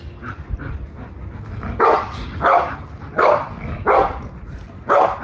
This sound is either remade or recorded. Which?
recorded